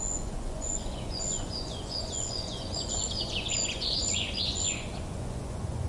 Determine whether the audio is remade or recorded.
remade